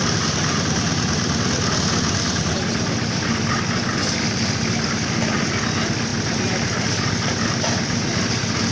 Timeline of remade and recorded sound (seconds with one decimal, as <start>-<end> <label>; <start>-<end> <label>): 0.0-8.7 recorded